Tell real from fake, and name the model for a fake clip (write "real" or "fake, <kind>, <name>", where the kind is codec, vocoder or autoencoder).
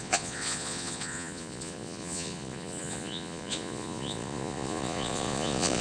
fake, vocoder, Vocos